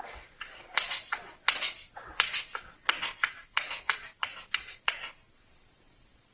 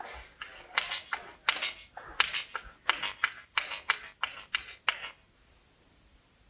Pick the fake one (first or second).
first